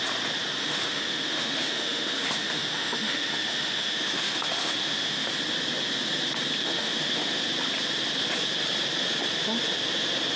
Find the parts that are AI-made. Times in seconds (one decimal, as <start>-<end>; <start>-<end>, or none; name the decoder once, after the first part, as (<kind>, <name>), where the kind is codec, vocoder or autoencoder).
0.6-5.3 (autoencoder, DAC-VAE); 6.6-7.4